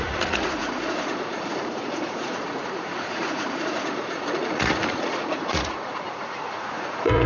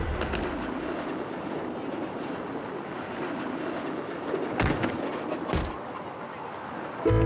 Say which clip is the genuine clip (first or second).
second